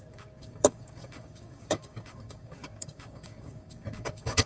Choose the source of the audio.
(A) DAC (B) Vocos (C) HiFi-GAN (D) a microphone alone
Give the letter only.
A